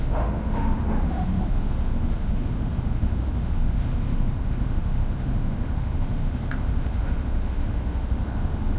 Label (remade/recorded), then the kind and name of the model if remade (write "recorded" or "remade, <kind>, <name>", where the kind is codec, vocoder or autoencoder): remade, autoencoder, DAC-VAE